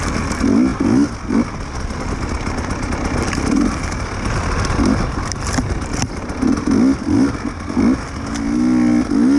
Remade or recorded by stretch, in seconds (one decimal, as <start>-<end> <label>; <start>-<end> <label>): 0.0-9.4 recorded